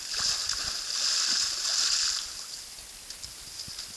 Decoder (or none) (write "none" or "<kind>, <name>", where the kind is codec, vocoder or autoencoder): none